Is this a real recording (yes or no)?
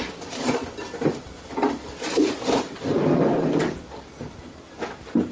yes